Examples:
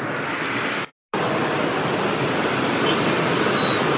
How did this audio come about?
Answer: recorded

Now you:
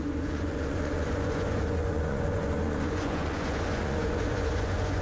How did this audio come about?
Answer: remade